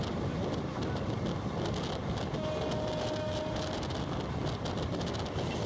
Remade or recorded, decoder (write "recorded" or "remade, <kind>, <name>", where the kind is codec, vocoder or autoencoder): recorded